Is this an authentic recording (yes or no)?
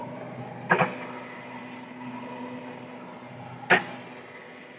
yes